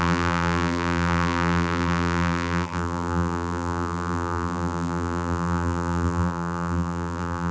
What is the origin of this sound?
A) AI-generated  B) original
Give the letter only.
A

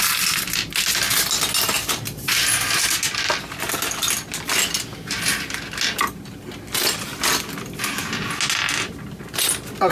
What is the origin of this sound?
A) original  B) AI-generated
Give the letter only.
A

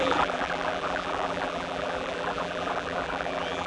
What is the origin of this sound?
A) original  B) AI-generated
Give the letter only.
B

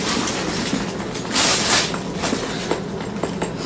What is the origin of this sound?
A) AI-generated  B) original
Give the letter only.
B